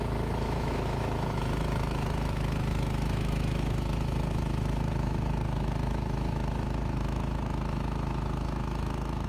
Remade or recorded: remade